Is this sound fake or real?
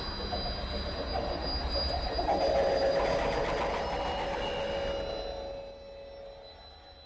real